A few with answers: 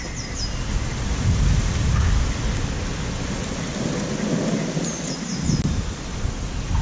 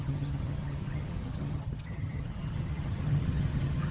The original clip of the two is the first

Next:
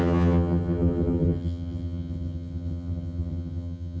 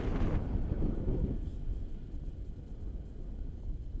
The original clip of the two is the second